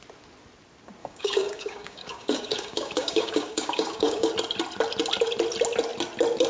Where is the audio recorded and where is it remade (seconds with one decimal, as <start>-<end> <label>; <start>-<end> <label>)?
0.0-1.0 recorded; 1.0-4.3 remade; 4.3-6.5 recorded